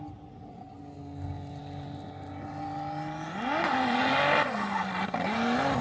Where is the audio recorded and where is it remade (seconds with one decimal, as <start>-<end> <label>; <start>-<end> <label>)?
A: 0.0-5.8 recorded